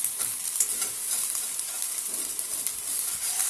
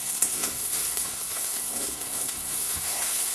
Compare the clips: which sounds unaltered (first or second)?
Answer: first